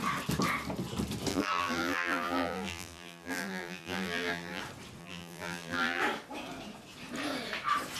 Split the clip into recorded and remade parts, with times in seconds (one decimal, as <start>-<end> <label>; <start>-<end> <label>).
0.0-1.3 recorded; 1.3-4.6 remade; 4.6-5.0 recorded; 5.0-6.0 remade; 6.0-8.0 recorded